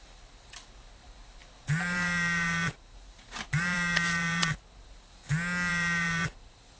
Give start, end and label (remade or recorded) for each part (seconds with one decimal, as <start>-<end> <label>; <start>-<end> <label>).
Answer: 0.0-5.2 remade; 5.2-5.7 recorded; 5.7-6.8 remade